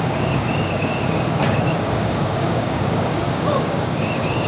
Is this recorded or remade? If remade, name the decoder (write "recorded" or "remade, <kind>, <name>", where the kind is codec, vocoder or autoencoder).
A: remade, codec, DAC